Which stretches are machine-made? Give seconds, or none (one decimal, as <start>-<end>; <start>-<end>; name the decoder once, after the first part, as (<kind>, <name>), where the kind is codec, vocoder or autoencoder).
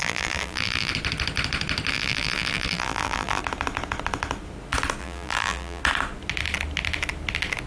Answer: 0.0-0.9 (vocoder, BigVGAN v2); 1.9-3.4; 5.0-5.8